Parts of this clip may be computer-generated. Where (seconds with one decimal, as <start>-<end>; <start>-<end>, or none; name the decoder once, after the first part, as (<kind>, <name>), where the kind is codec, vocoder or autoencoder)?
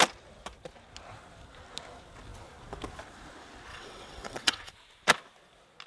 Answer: 3.7-4.7 (vocoder, WaveNeXt)